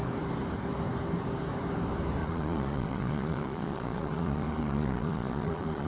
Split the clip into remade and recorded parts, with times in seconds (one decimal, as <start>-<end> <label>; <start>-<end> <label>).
0.0-2.2 recorded; 2.2-5.9 remade